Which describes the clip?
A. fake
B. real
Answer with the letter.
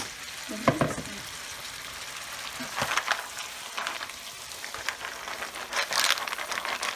B